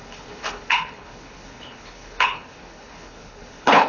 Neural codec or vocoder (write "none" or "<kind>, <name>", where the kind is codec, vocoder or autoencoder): codec, HILCodec